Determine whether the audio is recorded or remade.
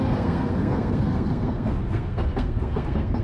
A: remade